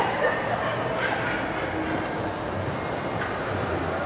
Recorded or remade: recorded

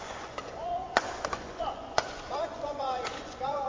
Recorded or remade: remade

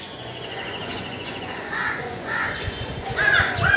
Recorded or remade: remade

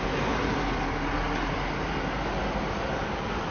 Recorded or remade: recorded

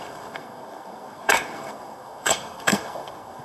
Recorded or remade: remade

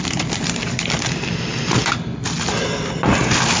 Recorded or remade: recorded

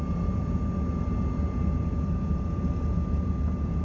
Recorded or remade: recorded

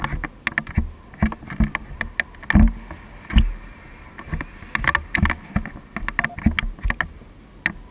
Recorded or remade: recorded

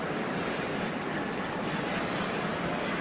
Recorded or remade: recorded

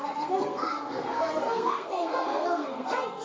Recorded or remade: remade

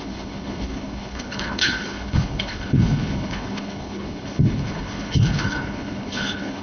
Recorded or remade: remade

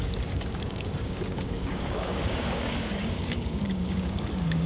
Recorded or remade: remade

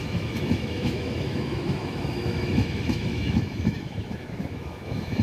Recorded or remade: remade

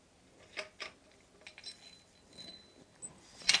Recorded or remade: recorded